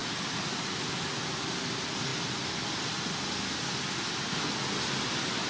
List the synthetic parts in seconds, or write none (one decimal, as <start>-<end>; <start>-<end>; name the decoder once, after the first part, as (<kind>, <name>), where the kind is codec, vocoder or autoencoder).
none